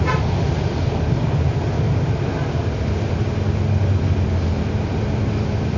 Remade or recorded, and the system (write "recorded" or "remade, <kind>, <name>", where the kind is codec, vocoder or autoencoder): recorded